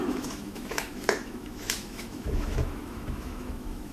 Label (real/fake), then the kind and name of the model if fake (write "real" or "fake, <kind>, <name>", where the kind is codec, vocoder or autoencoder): fake, autoencoder, DAC-VAE